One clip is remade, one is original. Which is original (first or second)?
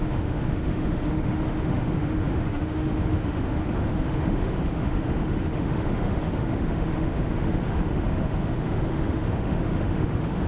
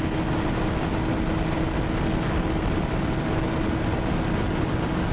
second